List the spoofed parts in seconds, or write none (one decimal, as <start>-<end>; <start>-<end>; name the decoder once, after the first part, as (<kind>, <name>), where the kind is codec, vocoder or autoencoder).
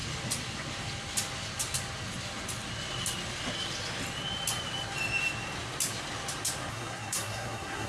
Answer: 6.7-7.9 (codec, SNAC)